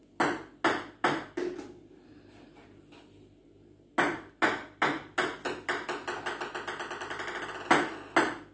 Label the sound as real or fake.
real